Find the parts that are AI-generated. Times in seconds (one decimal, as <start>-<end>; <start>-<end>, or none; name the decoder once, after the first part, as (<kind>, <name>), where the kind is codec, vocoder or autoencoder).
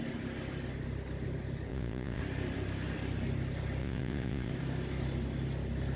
1.7-2.2 (vocoder, Vocos); 3.8-4.5